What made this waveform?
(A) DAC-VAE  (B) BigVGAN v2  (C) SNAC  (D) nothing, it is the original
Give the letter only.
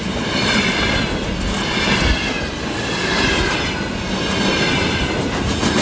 D